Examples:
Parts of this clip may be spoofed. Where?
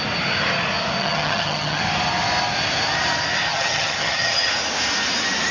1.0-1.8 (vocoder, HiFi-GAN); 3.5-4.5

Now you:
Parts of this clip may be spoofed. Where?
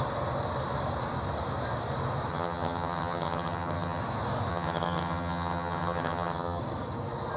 2.3-4.0 (vocoder, HiFi-GAN); 4.5-6.6